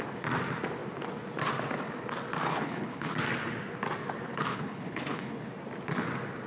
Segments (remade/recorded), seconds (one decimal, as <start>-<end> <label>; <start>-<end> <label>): 0.0-2.5 recorded; 2.5-3.1 remade; 3.1-4.5 recorded; 4.5-5.5 remade; 5.5-6.5 recorded